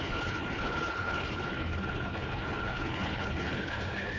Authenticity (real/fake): fake